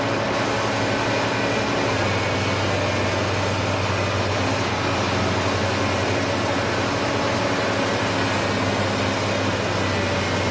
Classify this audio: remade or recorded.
recorded